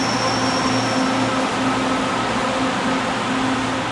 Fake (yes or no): no